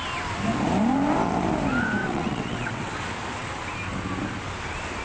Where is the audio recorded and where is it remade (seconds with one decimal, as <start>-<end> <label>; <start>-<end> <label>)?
0.0-2.0 recorded; 2.0-2.9 remade; 2.9-5.0 recorded